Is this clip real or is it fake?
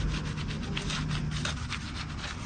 real